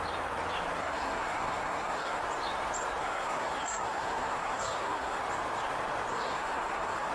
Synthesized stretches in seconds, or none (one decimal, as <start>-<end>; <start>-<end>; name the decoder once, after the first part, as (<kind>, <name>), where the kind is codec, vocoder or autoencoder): 0.8-2.2 (codec, SNAC); 3.0-5.2; 6.1-7.1